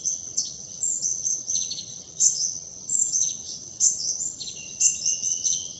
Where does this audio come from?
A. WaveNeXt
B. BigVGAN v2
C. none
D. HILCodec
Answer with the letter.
A